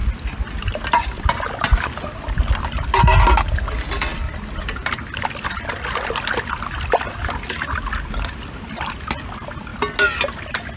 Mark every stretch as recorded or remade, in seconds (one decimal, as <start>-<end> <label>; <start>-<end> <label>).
0.0-10.8 recorded